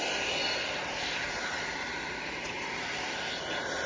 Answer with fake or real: fake